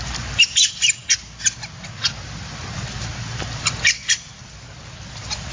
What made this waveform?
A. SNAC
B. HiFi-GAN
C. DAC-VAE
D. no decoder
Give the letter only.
D